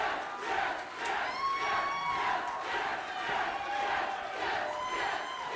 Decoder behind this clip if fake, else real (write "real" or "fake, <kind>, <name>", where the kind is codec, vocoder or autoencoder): real